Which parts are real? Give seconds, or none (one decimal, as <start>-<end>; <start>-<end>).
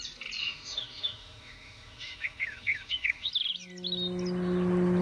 0.0-0.4; 3.3-5.0